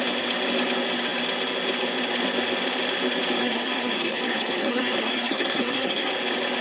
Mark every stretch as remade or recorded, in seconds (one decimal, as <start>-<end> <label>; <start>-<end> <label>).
0.0-3.4 recorded; 3.4-6.1 remade; 6.1-6.6 recorded